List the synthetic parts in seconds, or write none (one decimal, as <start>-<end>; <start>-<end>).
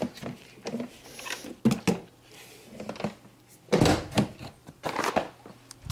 4.6-5.1